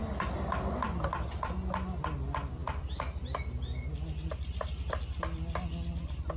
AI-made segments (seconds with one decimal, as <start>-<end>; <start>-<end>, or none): none